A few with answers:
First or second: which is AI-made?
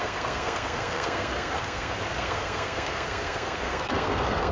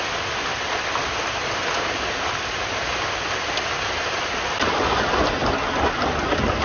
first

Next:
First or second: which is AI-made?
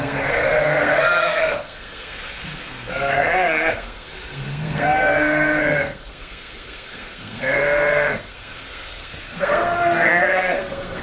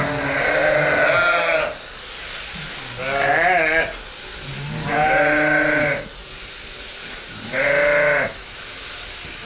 first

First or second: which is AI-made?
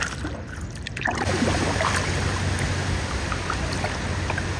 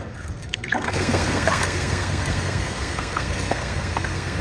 second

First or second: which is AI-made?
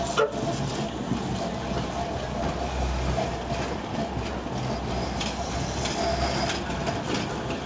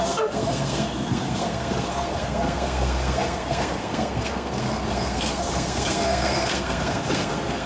second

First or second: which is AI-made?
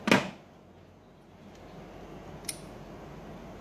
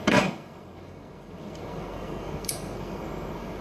second